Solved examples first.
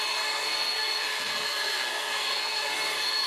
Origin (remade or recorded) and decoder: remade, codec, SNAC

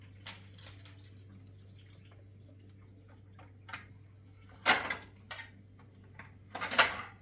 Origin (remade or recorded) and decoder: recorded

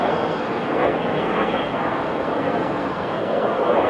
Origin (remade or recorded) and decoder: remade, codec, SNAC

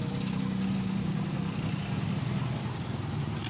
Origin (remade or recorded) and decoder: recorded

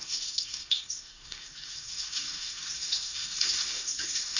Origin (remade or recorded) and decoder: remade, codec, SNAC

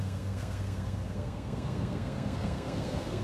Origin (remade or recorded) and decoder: remade, codec, SNAC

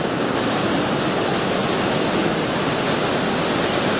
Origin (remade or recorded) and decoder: recorded